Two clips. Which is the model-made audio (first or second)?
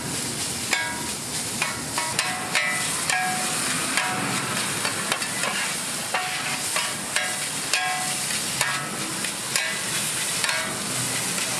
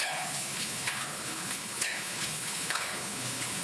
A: second